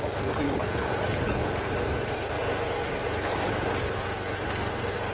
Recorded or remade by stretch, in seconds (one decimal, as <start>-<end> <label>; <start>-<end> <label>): 0.0-1.4 recorded; 1.4-2.4 remade; 2.4-3.0 recorded; 3.0-3.8 remade; 3.8-5.1 recorded